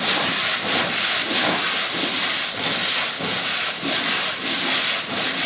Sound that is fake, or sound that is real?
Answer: real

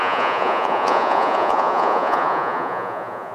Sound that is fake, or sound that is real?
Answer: fake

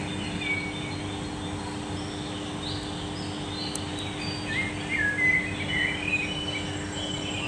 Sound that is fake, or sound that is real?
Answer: real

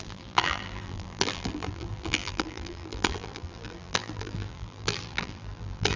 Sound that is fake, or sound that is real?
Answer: fake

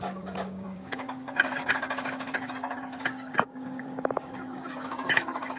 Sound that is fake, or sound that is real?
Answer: fake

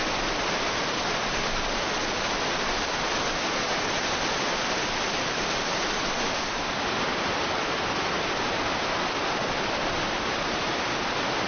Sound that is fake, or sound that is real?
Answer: real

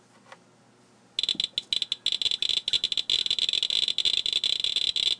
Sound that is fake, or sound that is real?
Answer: real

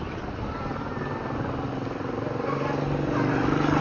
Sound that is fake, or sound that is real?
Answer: real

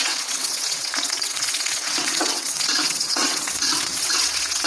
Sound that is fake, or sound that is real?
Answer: fake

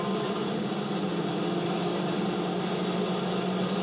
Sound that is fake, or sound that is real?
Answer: real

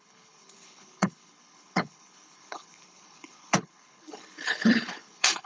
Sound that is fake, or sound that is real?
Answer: fake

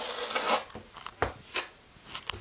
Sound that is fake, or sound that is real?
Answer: real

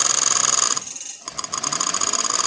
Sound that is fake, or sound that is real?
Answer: real